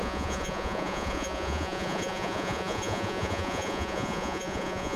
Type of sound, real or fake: fake